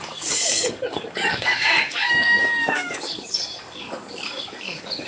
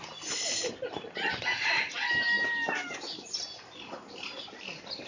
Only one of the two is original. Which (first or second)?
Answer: second